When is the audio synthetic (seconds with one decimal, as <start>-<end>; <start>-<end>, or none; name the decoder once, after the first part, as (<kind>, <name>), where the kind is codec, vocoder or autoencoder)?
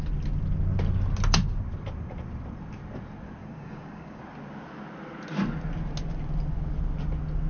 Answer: 3.4-4.2 (codec, DAC)